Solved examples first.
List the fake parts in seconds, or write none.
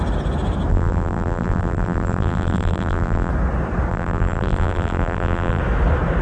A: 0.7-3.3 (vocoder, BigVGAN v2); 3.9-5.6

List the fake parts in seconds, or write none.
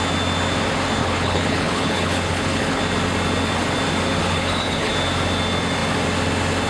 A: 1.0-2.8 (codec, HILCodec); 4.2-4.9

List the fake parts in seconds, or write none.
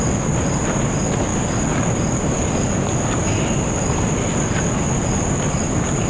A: none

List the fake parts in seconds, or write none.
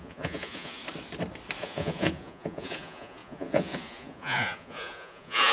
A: 0.0-0.8 (vocoder, Vocos); 1.6-5.5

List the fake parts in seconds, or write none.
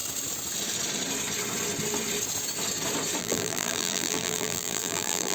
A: 3.2-5.3 (vocoder, BigVGAN v2)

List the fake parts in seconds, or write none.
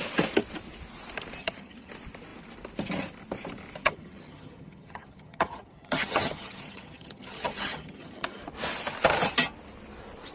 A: 1.4-1.9 (vocoder, HiFi-GAN); 3.8-8.4